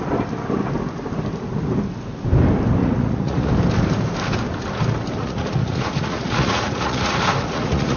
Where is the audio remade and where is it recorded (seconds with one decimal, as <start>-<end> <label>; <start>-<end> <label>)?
0.0-2.8 recorded; 2.8-3.5 remade; 3.5-5.2 recorded; 5.2-8.0 remade